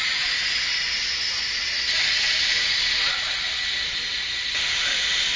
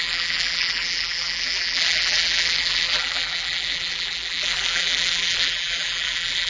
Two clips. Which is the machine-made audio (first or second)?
second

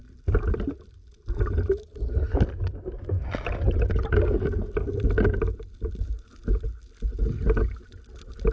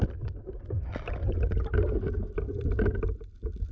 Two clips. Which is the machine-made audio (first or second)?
second